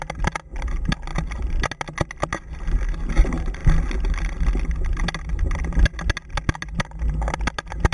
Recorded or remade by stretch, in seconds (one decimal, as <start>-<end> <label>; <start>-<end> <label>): 0.0-7.9 recorded